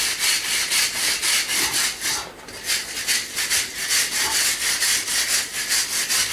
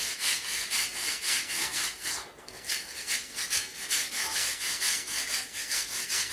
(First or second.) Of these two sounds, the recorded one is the first